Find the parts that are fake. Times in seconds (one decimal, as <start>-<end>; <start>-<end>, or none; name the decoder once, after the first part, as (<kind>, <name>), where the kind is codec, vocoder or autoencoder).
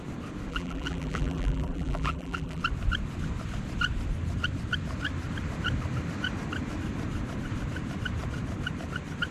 0.5-2.6 (vocoder, BigVGAN v2)